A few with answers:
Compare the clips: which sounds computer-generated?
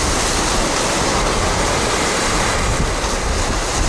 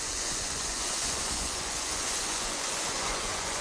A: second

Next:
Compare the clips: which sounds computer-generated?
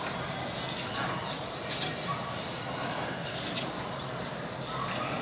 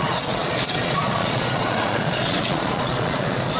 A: second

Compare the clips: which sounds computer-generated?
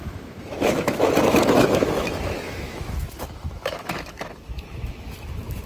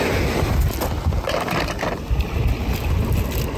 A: first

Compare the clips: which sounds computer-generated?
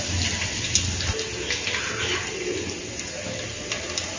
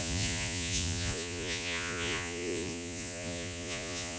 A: second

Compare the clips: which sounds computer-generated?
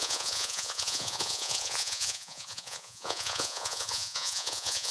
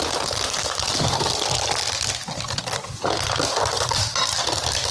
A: first